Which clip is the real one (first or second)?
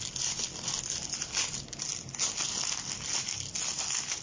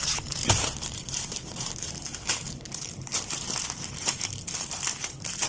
first